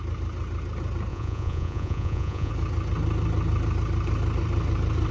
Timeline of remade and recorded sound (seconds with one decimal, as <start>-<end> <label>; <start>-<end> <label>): 0.0-1.1 recorded; 1.1-2.5 remade; 2.5-5.1 recorded